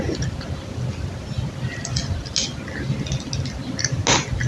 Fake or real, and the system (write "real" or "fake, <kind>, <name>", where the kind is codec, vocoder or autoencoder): real